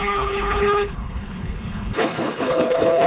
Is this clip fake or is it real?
fake